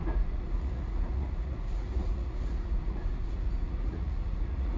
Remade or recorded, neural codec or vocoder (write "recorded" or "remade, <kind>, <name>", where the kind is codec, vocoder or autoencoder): remade, vocoder, Vocos